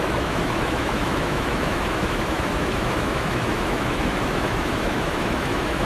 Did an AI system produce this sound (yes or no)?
yes